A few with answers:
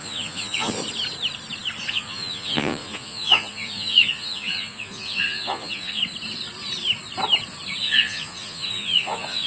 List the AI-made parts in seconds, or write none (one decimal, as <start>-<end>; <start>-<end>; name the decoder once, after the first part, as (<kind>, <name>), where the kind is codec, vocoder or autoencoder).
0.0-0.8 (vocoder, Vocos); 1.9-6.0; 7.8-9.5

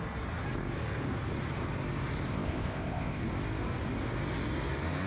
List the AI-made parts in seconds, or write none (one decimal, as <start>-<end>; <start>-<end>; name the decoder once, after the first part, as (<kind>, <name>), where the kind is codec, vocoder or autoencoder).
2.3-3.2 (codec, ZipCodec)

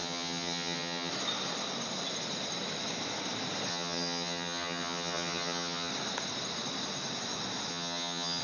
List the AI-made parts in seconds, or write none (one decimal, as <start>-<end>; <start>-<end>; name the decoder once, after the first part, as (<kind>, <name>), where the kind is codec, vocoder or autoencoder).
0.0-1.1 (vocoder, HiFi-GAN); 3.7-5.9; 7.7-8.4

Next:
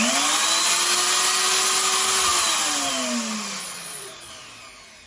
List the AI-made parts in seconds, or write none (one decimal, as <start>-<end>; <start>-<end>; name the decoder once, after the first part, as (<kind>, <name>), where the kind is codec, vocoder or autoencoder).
3.6-4.3 (vocoder, Vocos)

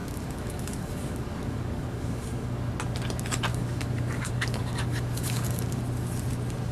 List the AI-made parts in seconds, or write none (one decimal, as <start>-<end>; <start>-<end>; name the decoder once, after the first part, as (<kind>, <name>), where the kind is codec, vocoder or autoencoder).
0.0-2.7 (codec, DAC); 3.5-5.8

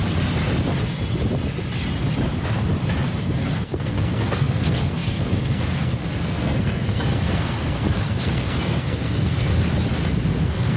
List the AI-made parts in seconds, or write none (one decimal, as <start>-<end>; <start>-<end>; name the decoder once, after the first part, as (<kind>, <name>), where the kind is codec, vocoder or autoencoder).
3.2-9.5 (codec, SNAC); 10.4-10.8